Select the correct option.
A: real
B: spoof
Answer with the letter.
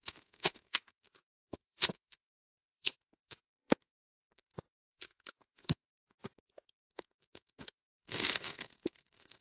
B